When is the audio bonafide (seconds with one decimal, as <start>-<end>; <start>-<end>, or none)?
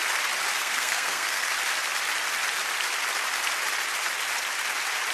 0.0-0.6; 1.5-5.1